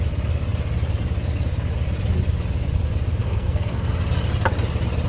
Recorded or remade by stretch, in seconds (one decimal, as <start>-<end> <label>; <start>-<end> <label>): 0.0-3.2 recorded; 3.2-3.9 remade; 3.9-5.1 recorded